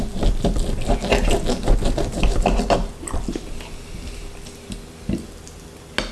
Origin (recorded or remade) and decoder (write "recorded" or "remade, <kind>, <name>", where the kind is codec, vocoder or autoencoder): recorded